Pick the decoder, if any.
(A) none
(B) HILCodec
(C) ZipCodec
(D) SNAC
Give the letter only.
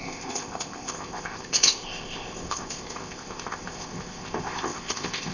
C